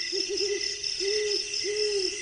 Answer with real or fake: real